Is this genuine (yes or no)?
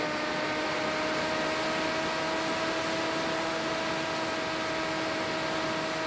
yes